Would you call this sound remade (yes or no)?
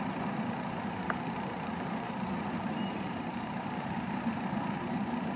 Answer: yes